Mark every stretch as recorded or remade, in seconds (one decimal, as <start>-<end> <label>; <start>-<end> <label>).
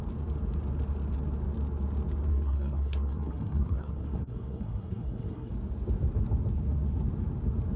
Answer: 0.0-2.3 recorded; 2.3-5.5 remade; 5.5-7.8 recorded